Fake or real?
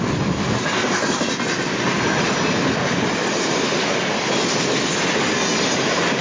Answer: real